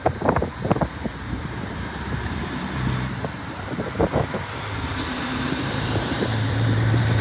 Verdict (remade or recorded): remade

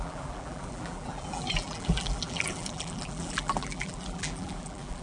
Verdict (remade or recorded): remade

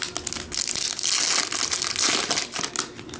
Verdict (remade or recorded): recorded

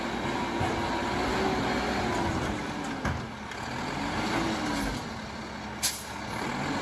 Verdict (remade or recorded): recorded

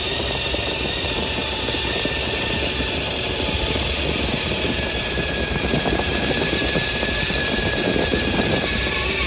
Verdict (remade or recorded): remade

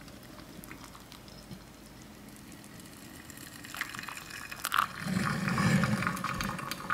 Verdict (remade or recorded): recorded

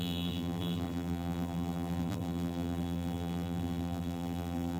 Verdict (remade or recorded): remade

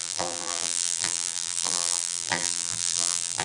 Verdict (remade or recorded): remade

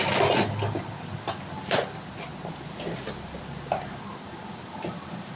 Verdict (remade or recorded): recorded